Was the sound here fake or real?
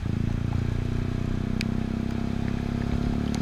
real